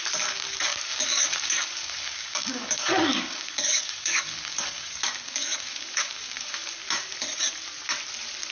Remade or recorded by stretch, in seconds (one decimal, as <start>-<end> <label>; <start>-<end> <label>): 0.0-6.8 remade; 6.8-8.5 recorded